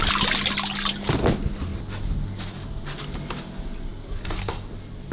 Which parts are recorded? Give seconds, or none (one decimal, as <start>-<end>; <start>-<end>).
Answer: 0.0-5.1